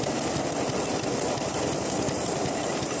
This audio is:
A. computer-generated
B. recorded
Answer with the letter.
B